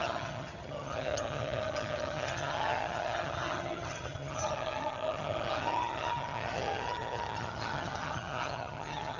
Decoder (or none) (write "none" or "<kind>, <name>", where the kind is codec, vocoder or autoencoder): vocoder, HiFi-GAN